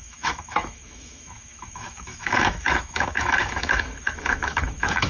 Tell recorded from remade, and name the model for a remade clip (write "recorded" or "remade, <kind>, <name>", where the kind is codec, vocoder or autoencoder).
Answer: remade, autoencoder, DAC-VAE